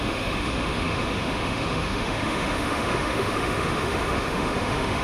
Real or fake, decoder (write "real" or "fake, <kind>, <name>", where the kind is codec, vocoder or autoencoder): fake, autoencoder, DAC-VAE